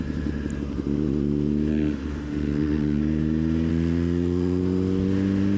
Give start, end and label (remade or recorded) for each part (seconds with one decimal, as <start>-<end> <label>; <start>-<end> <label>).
0.0-1.7 recorded; 1.7-3.0 remade; 3.0-3.7 recorded; 3.7-4.6 remade; 4.6-5.6 recorded